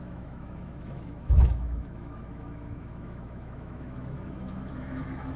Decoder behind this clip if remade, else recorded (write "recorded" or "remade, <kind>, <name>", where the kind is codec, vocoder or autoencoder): remade, autoencoder, DAC-VAE